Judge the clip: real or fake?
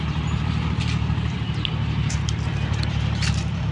fake